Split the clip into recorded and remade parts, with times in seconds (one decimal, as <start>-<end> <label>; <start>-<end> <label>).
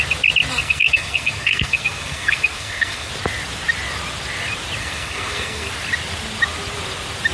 0.0-0.5 recorded; 0.5-3.1 remade; 3.1-4.8 recorded; 4.8-5.7 remade; 5.7-7.3 recorded